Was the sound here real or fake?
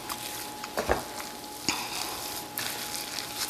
real